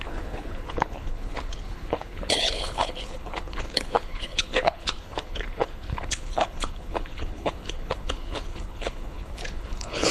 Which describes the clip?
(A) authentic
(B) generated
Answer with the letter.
B